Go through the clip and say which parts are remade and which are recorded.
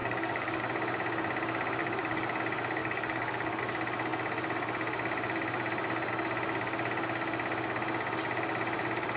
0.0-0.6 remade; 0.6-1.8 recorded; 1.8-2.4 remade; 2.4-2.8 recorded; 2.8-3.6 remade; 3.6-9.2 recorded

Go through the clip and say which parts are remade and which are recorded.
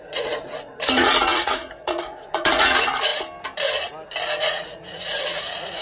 0.0-3.1 remade; 3.1-4.4 recorded; 4.4-5.8 remade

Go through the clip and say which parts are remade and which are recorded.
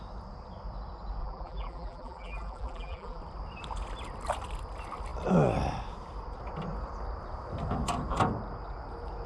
0.0-1.2 recorded; 1.2-3.2 remade; 3.2-9.3 recorded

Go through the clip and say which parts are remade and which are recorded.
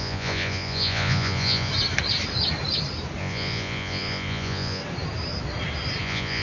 0.0-1.7 remade; 1.7-3.2 recorded; 3.2-4.8 remade; 4.8-6.0 recorded; 6.0-6.4 remade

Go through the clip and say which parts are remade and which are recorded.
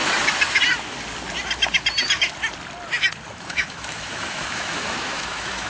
0.0-3.3 recorded; 3.3-5.7 remade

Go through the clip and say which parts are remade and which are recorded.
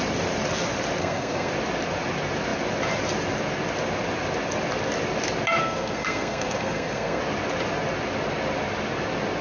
0.0-1.0 recorded; 1.0-1.5 remade; 1.5-5.6 recorded; 5.6-7.2 remade; 7.2-9.4 recorded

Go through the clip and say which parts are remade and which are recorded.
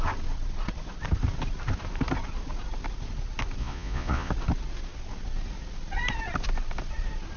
0.0-3.6 recorded; 3.6-4.3 remade; 4.3-7.4 recorded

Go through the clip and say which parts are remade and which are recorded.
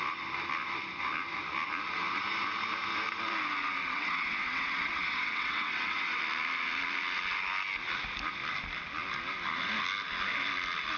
0.0-3.8 recorded; 3.8-6.2 remade; 6.2-11.0 recorded